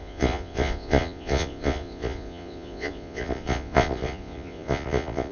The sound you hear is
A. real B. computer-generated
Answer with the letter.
B